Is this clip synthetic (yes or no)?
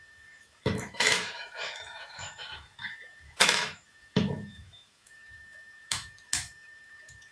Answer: yes